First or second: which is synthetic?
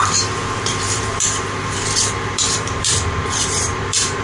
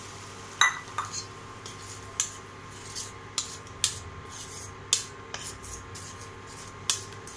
first